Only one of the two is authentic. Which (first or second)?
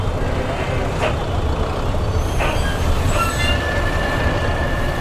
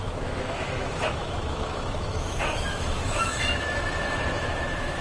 first